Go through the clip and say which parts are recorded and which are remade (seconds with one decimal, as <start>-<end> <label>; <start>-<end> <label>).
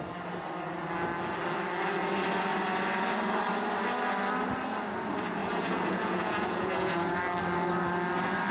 0.0-5.4 recorded; 5.4-7.2 remade; 7.2-8.5 recorded